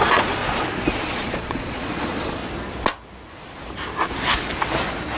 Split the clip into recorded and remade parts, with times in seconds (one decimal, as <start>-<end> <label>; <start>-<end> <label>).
0.0-0.4 remade; 0.4-1.0 recorded; 1.0-2.4 remade; 2.4-5.2 recorded